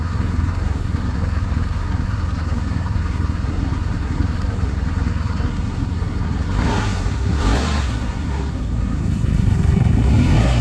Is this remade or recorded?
remade